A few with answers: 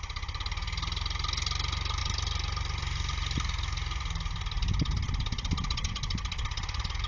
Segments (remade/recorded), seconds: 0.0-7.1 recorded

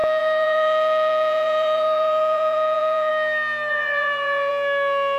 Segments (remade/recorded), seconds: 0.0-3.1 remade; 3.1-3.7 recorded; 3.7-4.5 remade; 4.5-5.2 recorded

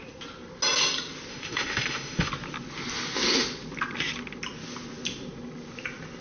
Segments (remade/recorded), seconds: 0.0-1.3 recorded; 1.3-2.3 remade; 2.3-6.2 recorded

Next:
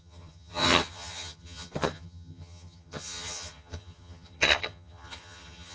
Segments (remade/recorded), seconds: 0.0-5.7 remade

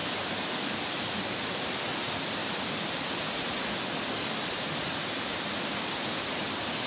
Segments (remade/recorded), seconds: 0.0-6.9 recorded

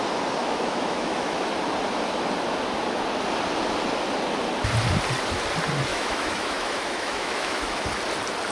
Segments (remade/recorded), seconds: 0.0-0.4 recorded; 0.4-1.5 remade; 1.5-5.9 recorded; 5.9-7.8 remade; 7.8-8.5 recorded

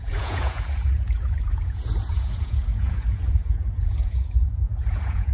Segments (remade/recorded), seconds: 0.0-5.3 remade

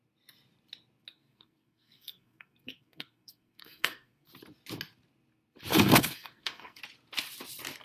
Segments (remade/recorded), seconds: 0.0-1.1 recorded; 1.1-4.3 remade; 4.3-5.7 recorded; 5.7-6.8 remade; 6.8-7.8 recorded